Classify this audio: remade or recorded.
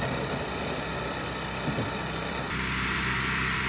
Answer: remade